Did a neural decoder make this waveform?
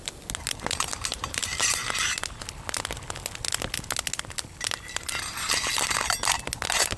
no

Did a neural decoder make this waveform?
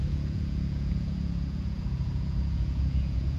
yes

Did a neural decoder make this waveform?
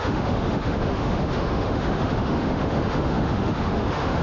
yes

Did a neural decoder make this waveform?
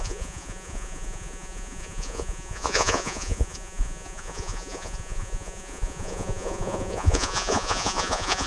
yes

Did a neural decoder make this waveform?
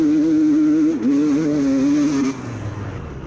no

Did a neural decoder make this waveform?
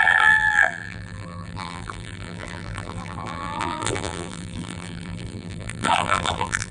yes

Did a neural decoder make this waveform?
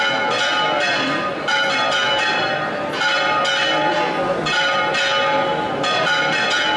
no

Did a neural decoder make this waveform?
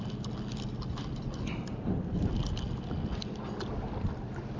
no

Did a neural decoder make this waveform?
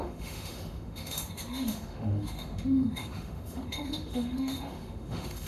yes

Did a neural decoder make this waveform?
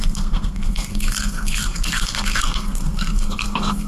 yes